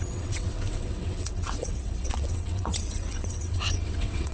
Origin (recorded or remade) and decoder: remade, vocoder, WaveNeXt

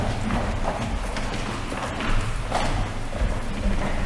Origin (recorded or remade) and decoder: recorded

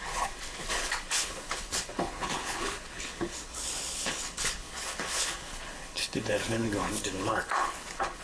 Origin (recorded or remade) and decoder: remade, codec, HILCodec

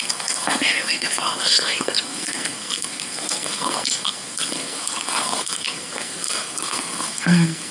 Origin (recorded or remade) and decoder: remade, codec, SNAC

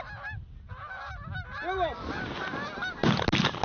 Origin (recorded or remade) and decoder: recorded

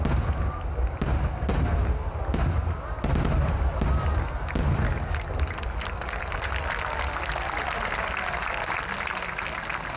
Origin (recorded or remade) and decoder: recorded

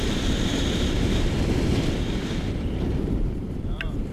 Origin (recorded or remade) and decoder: remade, vocoder, BigVGAN v2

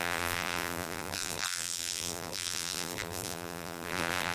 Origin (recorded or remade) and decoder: remade, vocoder, BigVGAN v2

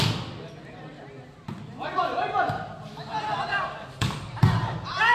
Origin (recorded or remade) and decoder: recorded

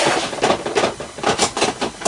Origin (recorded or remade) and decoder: recorded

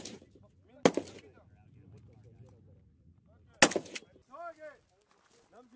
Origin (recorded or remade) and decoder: recorded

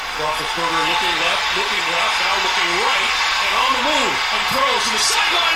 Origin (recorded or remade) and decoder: recorded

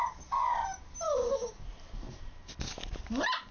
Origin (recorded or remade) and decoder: recorded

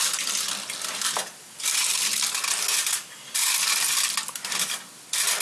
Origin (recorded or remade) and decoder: recorded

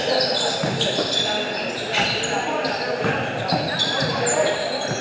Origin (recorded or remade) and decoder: recorded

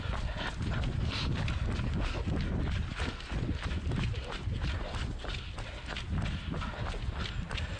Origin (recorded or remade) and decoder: recorded